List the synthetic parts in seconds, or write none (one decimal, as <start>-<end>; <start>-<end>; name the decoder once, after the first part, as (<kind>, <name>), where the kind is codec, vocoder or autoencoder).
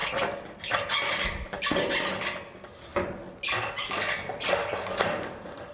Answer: none